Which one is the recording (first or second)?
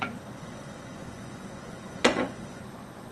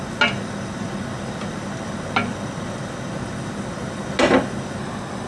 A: second